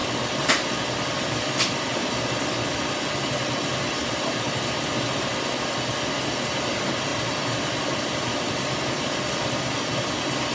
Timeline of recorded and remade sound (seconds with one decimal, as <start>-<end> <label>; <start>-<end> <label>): 0.0-7.1 recorded; 7.1-8.7 remade; 8.7-10.5 recorded